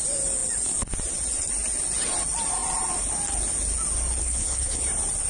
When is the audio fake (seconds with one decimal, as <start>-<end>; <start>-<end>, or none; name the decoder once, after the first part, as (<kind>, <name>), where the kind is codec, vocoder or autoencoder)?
4.2-4.8 (codec, HILCodec)